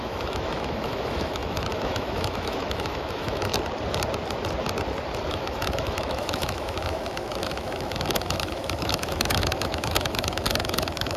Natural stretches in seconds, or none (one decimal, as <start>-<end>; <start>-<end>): 3.5-5.3